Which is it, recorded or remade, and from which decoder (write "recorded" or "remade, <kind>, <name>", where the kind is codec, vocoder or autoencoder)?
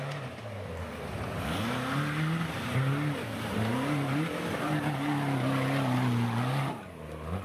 recorded